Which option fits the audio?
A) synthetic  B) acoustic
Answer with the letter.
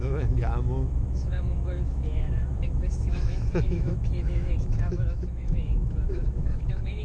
A